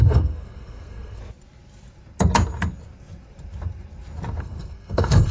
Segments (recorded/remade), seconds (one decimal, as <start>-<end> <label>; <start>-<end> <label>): 0.0-1.2 remade; 1.2-4.4 recorded; 4.4-5.3 remade

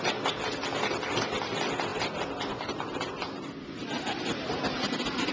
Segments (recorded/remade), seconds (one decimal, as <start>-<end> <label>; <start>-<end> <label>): 0.0-5.3 recorded

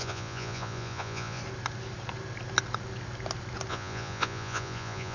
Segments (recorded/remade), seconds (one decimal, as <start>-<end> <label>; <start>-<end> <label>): 0.0-1.4 remade; 1.4-3.7 recorded; 3.7-5.1 remade

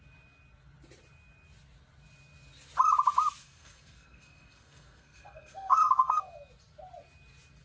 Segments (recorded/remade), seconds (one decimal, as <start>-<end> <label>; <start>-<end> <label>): 0.0-3.4 recorded; 3.4-6.2 remade; 6.2-7.6 recorded

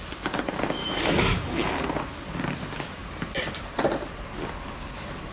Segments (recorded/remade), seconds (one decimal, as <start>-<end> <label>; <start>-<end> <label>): 0.0-0.8 recorded; 0.8-1.7 remade; 1.7-5.3 recorded

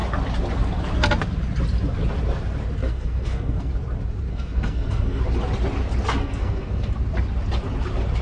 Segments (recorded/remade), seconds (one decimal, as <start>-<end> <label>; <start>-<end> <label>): 0.0-2.8 recorded; 2.8-3.7 remade; 3.7-4.3 recorded; 4.3-5.2 remade; 5.2-6.2 recorded; 6.2-6.9 remade; 6.9-8.2 recorded